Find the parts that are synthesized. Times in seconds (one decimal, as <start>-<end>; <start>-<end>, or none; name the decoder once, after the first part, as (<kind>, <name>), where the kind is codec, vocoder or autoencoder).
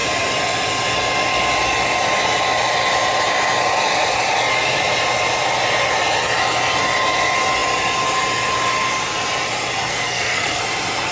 9.9-10.6 (codec, SNAC)